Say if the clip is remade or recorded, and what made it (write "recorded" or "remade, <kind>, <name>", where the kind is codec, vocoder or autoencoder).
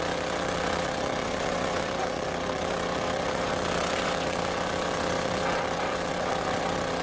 remade, vocoder, WaveNeXt